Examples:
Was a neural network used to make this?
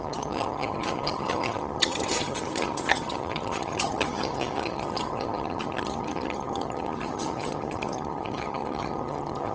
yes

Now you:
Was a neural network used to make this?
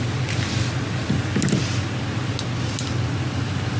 no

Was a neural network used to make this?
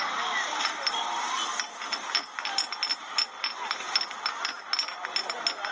no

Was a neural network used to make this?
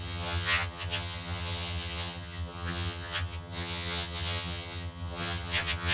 yes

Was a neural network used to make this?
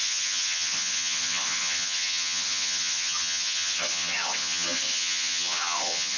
yes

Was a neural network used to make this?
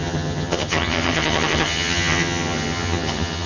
yes